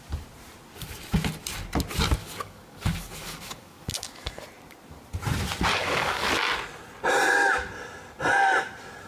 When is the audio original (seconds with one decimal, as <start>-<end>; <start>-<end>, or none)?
0.0-2.2; 4.4-5.7; 6.3-9.1

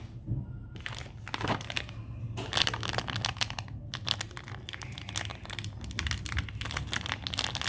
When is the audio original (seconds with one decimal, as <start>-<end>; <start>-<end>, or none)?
0.0-7.7